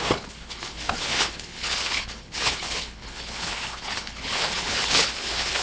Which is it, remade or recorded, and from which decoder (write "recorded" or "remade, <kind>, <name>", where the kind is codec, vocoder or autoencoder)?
remade, codec, HILCodec